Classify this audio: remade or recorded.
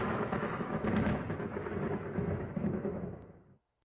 remade